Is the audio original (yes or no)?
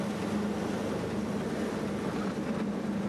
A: yes